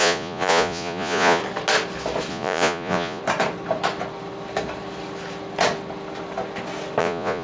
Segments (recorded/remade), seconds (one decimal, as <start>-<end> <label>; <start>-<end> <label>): 0.0-1.4 remade; 1.4-2.3 recorded; 2.3-3.2 remade; 3.2-7.0 recorded; 7.0-7.4 remade